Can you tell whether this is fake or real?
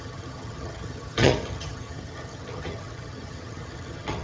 fake